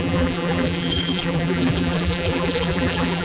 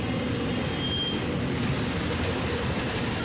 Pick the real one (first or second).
second